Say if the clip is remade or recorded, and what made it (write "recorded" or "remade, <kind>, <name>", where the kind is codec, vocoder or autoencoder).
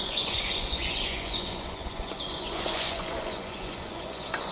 remade, vocoder, Vocos